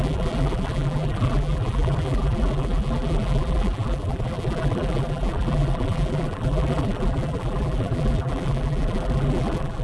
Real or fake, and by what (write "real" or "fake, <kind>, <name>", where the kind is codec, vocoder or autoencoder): fake, vocoder, BigVGAN v2